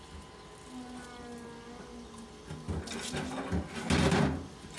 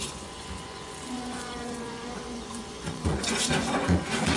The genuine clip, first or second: first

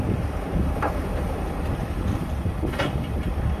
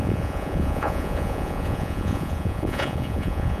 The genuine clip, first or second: first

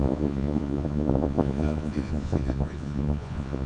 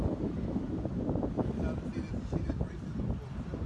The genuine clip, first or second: second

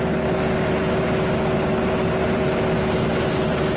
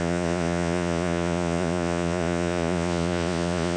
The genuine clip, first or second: first